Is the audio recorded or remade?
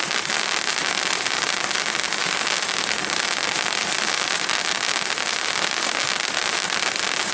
recorded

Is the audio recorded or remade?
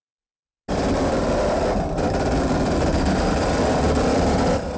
recorded